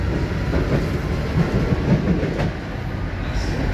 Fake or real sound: real